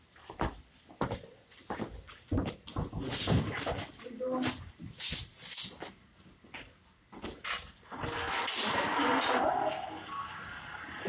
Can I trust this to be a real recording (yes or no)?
yes